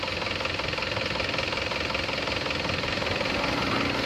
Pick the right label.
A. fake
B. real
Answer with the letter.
B